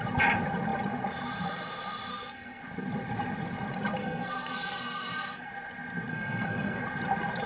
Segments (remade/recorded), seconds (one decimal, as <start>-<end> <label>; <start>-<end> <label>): 0.0-2.1 recorded; 2.1-2.6 remade; 2.6-4.0 recorded; 4.0-5.5 remade; 5.5-6.1 recorded; 6.1-6.8 remade; 6.8-7.5 recorded